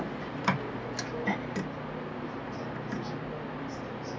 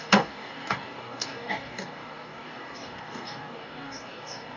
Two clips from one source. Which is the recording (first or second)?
first